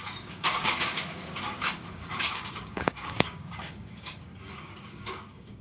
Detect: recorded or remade remade